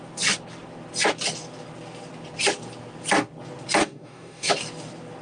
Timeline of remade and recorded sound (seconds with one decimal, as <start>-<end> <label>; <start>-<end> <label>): 0.0-3.8 recorded; 3.8-4.5 remade; 4.5-5.2 recorded